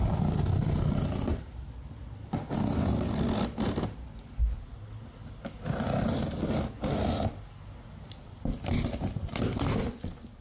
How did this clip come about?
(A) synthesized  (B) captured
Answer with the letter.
B